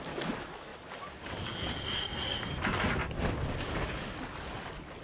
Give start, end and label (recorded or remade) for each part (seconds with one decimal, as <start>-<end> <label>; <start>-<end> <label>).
0.0-5.0 recorded